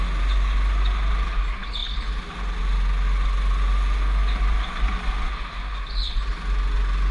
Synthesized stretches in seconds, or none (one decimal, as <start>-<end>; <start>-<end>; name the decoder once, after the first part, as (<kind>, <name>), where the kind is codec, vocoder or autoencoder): none